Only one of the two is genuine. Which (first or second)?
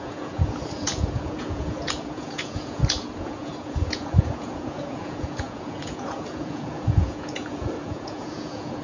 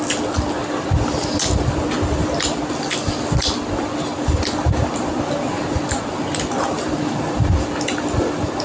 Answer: second